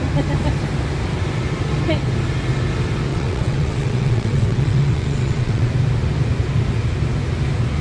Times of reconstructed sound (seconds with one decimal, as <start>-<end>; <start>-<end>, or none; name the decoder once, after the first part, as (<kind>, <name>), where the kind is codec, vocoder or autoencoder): 3.1-5.7 (vocoder, WaveNeXt)